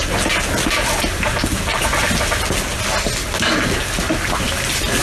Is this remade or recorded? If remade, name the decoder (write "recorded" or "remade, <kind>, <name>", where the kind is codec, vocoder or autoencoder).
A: recorded